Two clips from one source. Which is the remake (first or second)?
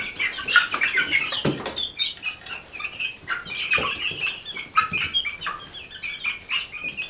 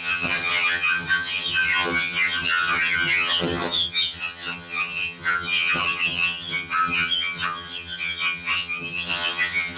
second